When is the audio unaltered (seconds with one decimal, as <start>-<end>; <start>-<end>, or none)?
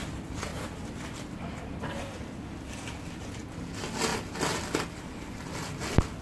0.0-6.2